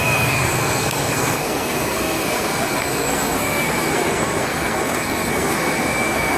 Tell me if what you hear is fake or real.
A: fake